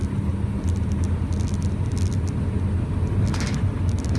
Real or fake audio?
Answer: real